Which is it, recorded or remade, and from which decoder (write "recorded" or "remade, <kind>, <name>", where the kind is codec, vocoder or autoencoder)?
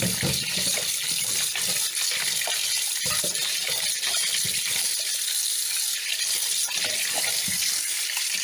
recorded